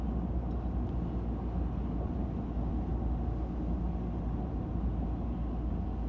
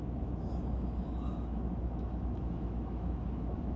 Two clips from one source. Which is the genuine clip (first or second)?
first